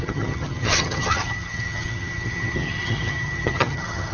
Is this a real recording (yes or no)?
no